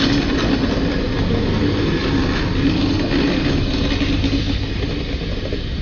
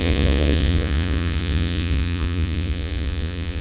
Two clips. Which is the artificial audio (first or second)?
second